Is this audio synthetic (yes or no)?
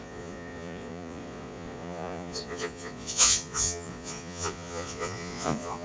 yes